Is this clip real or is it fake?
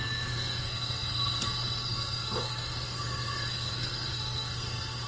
fake